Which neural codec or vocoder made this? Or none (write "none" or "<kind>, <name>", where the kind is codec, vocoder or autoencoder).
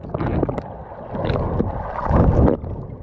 none